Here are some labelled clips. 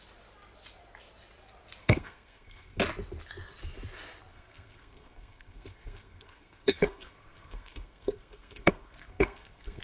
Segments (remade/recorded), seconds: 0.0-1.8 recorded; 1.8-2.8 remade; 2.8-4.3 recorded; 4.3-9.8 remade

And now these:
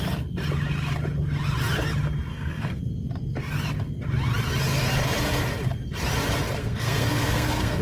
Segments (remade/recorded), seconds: 0.0-2.3 recorded; 2.3-2.8 remade; 2.8-6.6 recorded; 6.6-7.8 remade

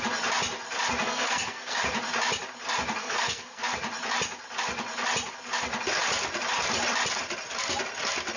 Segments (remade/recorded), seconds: 0.0-1.0 recorded; 1.0-1.8 remade; 1.8-3.0 recorded; 3.0-3.6 remade; 3.6-8.4 recorded

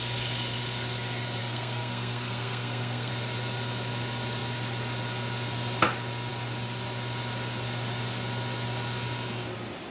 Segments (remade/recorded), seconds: 0.0-1.4 recorded; 1.4-3.1 remade; 3.1-9.9 recorded

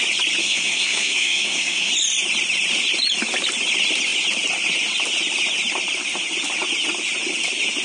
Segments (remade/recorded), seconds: 0.0-0.4 recorded; 0.4-1.9 remade; 1.9-7.8 recorded

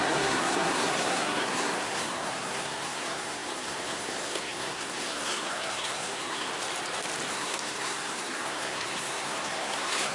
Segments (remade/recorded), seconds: 0.0-6.5 remade; 6.5-7.3 recorded; 7.3-10.1 remade